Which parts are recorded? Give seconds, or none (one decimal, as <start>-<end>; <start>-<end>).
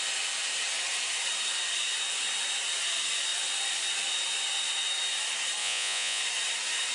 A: 0.0-5.6; 6.2-6.9